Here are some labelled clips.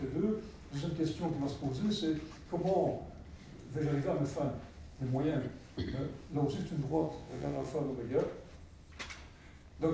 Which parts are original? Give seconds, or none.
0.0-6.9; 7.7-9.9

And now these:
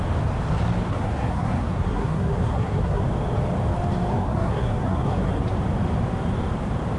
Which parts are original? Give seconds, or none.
0.0-0.9; 3.0-4.1; 5.3-7.0

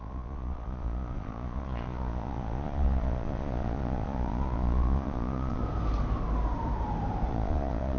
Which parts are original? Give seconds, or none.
5.6-7.3

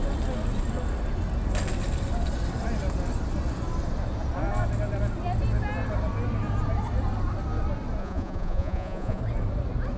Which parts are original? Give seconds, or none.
0.0-8.0; 9.2-10.0

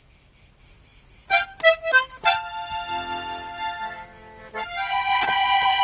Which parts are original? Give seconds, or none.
0.0-4.9

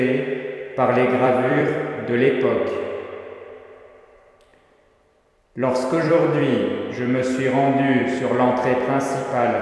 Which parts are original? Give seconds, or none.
0.0-1.1; 2.5-4.5; 6.4-9.6

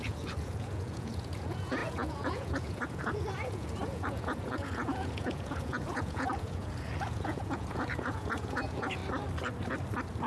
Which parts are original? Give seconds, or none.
9.0-10.3